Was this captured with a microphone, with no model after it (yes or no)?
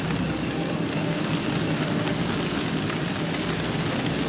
yes